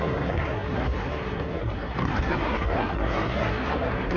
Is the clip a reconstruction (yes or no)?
yes